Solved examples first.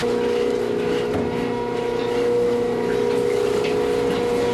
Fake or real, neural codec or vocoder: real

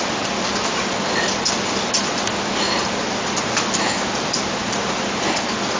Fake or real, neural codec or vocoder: real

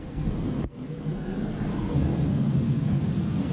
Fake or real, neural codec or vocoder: fake, codec, SNAC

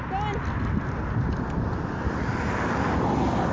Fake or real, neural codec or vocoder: real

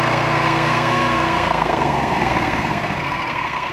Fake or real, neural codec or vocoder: fake, codec, SNAC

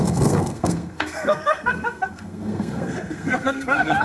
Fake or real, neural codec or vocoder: fake, codec, SNAC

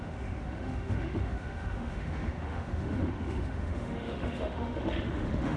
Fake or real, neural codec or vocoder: fake, autoencoder, DAC-VAE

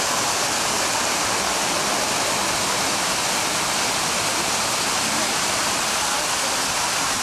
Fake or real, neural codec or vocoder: real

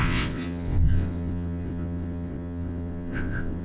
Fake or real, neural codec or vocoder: fake, vocoder, WaveNeXt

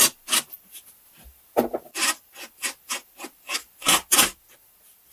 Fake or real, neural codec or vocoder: real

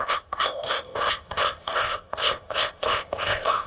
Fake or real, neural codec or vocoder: fake, codec, ZipCodec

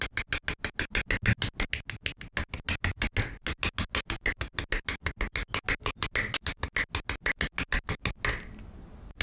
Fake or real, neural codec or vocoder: real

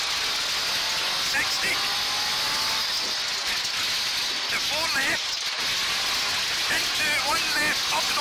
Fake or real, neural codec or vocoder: real